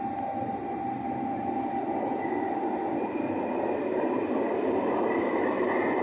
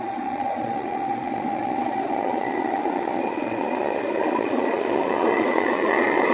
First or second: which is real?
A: first